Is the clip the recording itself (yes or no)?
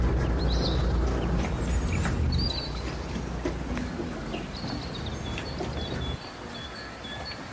yes